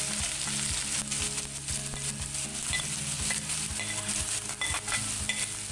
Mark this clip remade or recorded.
recorded